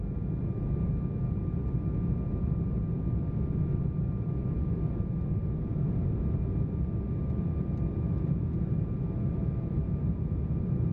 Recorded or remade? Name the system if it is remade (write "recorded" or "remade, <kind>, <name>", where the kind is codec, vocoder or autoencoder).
recorded